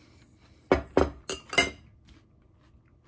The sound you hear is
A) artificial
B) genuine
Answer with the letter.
B